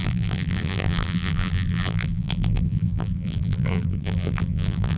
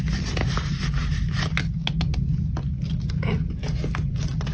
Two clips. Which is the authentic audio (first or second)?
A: second